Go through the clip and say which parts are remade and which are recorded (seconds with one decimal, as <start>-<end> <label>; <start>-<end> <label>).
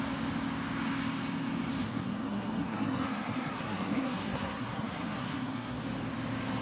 0.0-1.8 recorded; 1.8-5.8 remade; 5.8-6.6 recorded